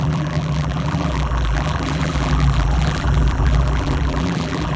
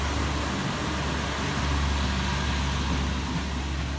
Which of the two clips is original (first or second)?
second